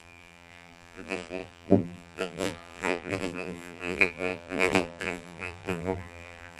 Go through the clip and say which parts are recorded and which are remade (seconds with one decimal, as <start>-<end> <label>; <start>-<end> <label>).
0.0-6.6 remade